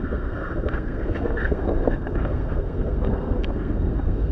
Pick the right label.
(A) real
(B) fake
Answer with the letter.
B